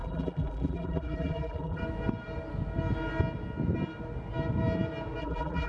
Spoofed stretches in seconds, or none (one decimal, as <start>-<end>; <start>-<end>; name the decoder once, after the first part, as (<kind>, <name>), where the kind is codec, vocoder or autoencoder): 0.0-1.8 (vocoder, BigVGAN v2); 5.2-5.7